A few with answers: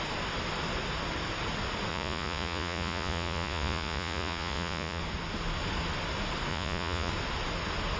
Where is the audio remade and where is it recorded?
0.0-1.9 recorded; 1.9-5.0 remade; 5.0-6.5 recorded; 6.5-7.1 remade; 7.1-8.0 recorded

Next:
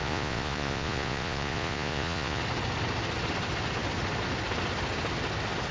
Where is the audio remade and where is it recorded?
0.0-2.4 remade; 2.4-5.7 recorded

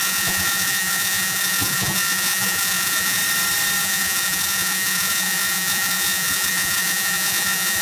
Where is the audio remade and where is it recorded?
0.0-3.2 remade; 3.2-3.8 recorded; 3.8-7.8 remade

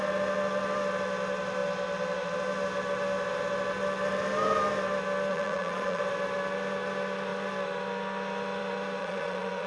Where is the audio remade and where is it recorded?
0.0-5.3 recorded; 5.3-6.0 remade; 6.0-9.0 recorded; 9.0-9.7 remade

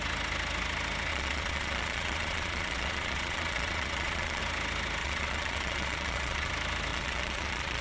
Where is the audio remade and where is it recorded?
0.0-1.1 recorded; 1.1-4.4 remade; 4.4-5.0 recorded; 5.0-6.5 remade; 6.5-6.9 recorded; 6.9-7.8 remade

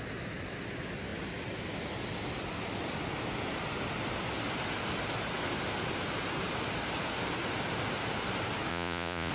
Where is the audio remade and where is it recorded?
0.0-8.7 recorded; 8.7-9.3 remade

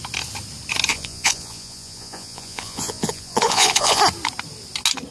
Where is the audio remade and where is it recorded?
0.0-0.9 recorded; 0.9-4.0 remade; 4.0-5.1 recorded

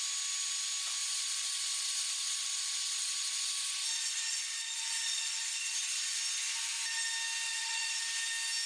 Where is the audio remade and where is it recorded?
0.0-1.0 recorded; 1.0-6.2 remade; 6.2-7.5 recorded; 7.5-8.0 remade; 8.0-8.7 recorded